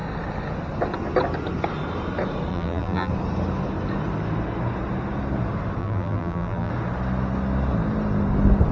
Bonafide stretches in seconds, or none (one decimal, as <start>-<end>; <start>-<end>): 0.0-2.5; 3.1-5.8; 6.7-8.7